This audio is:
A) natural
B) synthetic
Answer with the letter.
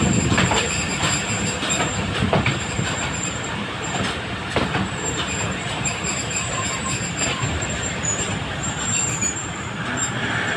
B